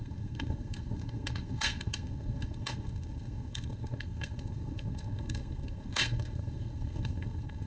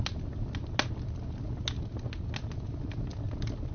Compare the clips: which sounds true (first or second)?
second